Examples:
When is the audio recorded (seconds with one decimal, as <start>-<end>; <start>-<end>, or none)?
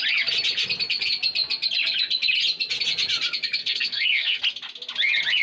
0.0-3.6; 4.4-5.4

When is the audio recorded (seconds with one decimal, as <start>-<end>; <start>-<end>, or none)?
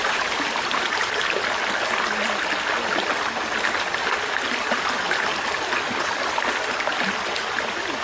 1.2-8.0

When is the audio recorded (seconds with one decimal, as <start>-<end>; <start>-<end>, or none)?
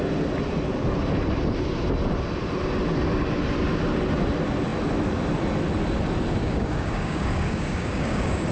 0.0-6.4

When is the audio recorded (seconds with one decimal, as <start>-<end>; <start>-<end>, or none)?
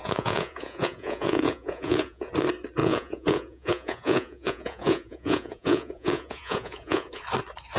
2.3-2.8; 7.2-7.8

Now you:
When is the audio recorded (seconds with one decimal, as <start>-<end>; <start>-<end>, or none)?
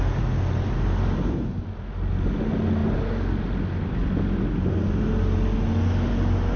0.0-6.6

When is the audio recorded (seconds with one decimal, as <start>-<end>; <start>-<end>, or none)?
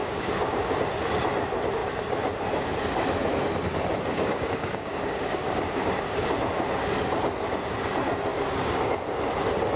0.7-4.1; 6.7-8.3; 8.9-9.8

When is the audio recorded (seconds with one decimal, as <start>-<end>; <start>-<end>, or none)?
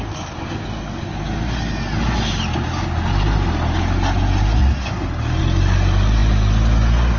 0.0-7.2